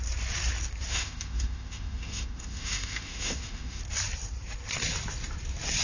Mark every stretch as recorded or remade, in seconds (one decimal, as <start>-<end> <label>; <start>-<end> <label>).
0.0-0.9 recorded; 0.9-3.8 remade; 3.8-5.8 recorded